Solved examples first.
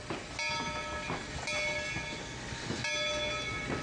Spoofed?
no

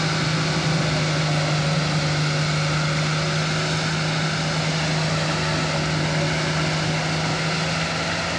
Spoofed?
no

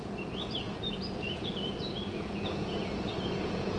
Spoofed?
yes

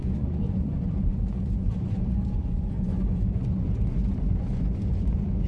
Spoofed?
yes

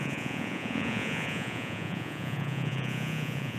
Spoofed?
yes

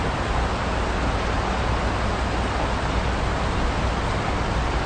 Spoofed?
no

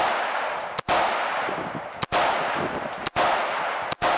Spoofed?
no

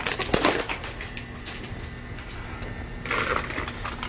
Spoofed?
no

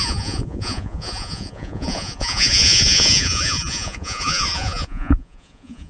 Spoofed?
yes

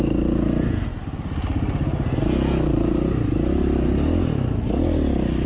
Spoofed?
no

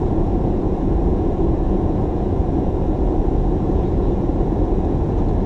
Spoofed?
yes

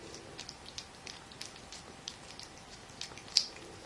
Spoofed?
no